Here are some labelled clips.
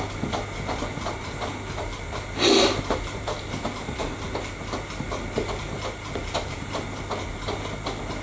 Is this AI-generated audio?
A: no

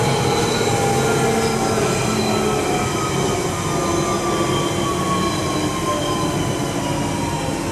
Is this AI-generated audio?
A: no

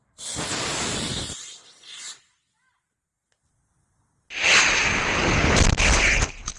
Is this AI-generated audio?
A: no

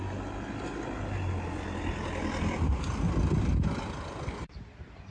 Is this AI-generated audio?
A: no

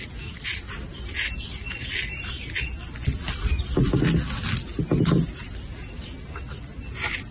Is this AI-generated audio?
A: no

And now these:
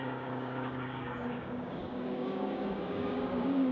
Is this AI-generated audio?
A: yes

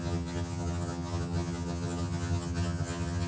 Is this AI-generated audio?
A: yes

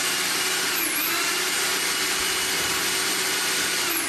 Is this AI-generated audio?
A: no